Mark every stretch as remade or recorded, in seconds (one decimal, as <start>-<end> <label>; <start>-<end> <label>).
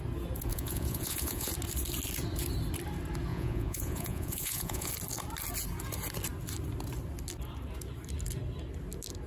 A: 0.0-0.5 recorded; 0.5-1.5 remade; 1.5-3.3 recorded; 3.3-4.9 remade; 4.9-9.3 recorded